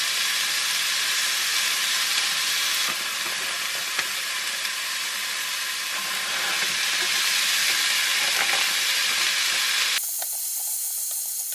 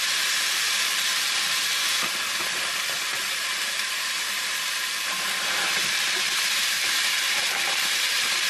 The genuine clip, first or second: first